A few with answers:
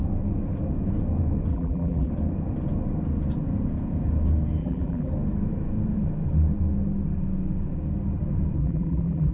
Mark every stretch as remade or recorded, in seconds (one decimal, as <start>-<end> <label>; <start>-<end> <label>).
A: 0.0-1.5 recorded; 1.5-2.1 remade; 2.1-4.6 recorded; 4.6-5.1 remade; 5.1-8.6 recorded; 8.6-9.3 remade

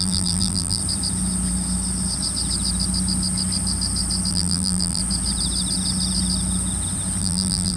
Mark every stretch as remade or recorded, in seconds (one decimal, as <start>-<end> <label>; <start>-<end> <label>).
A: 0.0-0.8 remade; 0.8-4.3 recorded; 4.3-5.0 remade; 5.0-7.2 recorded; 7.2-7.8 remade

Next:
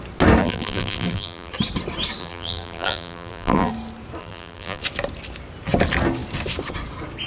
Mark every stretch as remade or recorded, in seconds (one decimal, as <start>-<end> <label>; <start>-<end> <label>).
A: 0.0-0.4 recorded; 0.4-1.5 remade; 1.5-2.2 recorded; 2.2-3.7 remade; 3.7-4.2 recorded; 4.2-4.8 remade; 4.8-7.3 recorded

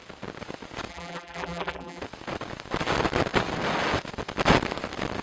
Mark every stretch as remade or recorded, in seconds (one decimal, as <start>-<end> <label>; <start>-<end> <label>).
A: 0.0-0.9 recorded; 0.9-2.0 remade; 2.0-5.2 recorded